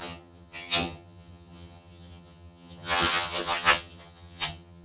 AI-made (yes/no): yes